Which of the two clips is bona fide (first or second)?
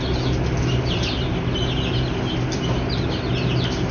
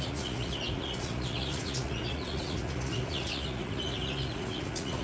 first